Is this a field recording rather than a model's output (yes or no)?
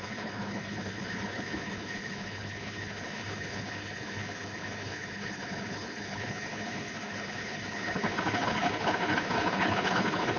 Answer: no